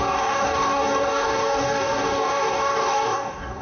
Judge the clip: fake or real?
fake